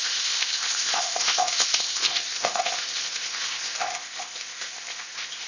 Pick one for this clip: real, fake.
fake